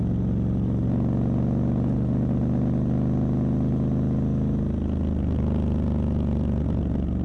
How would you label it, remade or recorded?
recorded